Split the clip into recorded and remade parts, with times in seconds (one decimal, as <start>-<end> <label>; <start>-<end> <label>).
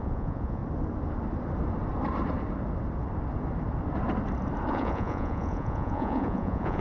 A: 0.0-0.6 remade; 0.6-4.7 recorded; 4.7-6.8 remade